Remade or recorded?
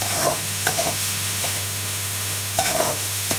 remade